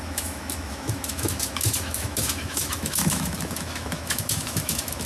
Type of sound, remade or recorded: remade